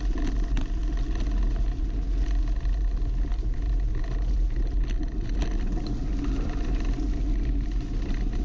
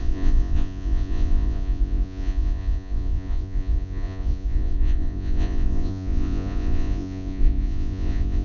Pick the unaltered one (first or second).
first